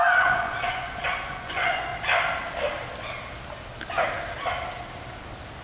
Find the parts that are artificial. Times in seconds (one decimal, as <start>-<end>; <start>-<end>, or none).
0.0-1.9